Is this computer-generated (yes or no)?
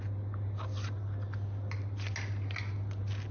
no